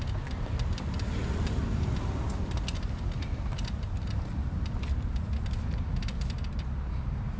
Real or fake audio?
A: real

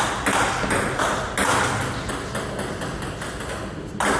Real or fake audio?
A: real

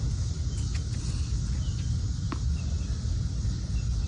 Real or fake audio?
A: real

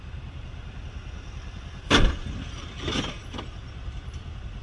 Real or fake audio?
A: real